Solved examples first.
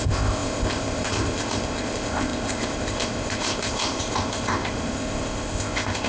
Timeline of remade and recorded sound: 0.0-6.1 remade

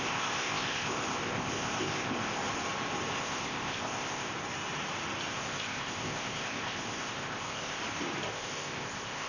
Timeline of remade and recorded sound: 0.0-2.4 remade; 2.4-3.2 recorded; 3.2-4.3 remade; 4.3-5.3 recorded; 5.3-7.8 remade; 7.8-8.3 recorded; 8.3-9.3 remade

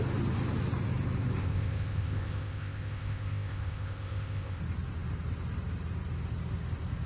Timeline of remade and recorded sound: 0.0-1.4 recorded; 1.4-4.6 remade; 4.6-7.1 recorded

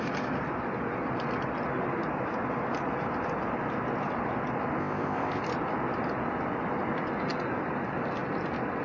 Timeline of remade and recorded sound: 0.0-4.8 recorded; 4.8-5.4 remade; 5.4-8.8 recorded

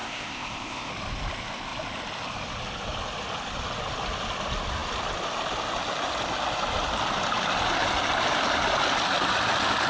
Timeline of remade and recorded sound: 0.0-0.9 remade; 0.9-9.9 recorded

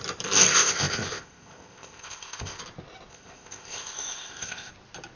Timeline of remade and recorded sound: 0.0-0.5 recorded; 0.5-2.6 remade; 2.6-3.1 recorded; 3.1-4.7 remade; 4.7-5.2 recorded